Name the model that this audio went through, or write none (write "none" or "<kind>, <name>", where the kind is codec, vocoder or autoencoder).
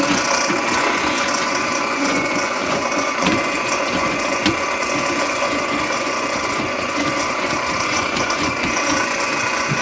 vocoder, Vocos